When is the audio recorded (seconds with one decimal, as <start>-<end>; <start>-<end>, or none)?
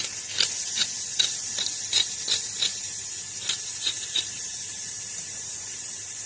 0.0-3.8